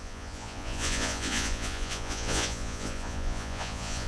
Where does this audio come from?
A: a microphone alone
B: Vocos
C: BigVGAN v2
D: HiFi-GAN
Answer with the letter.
B